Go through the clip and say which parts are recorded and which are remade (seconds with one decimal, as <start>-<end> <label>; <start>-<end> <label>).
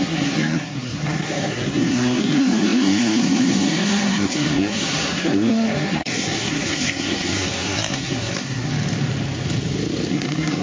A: 0.0-8.7 remade; 8.7-10.1 recorded; 10.1-10.6 remade